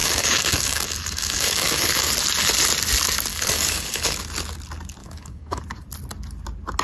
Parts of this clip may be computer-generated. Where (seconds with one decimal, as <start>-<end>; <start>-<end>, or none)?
0.0-2.1; 3.3-4.2; 5.0-5.6